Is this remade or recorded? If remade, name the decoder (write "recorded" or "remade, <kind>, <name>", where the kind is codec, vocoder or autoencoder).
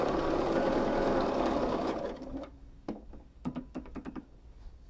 remade, codec, DAC